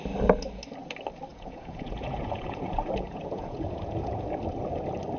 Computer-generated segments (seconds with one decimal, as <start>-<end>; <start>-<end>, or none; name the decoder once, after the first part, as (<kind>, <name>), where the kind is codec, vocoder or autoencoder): 1.3-4.4 (vocoder, Vocos)